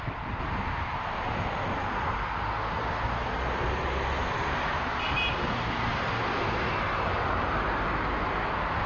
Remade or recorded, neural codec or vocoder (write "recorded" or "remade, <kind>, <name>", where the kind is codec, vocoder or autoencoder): recorded